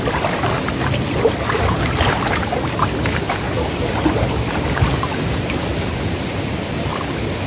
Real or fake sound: real